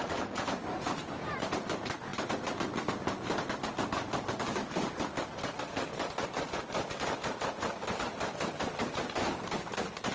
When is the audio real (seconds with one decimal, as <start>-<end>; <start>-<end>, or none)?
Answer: 0.0-10.1